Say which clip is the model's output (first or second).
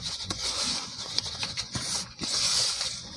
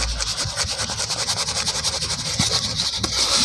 first